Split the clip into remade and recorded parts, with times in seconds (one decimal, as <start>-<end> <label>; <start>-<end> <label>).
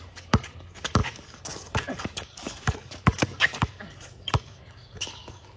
0.0-5.6 remade